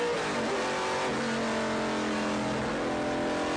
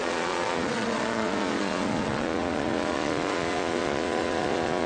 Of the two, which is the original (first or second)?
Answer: first